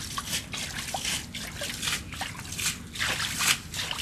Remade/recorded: recorded